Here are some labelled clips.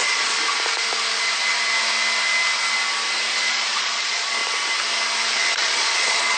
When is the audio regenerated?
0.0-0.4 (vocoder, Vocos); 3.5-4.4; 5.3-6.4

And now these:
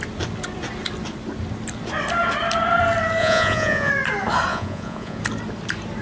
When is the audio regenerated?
3.2-3.9 (vocoder, Vocos); 4.5-5.2